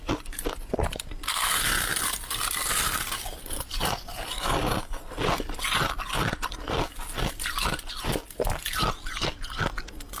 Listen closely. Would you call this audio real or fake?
real